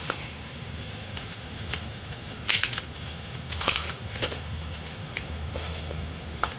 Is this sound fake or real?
fake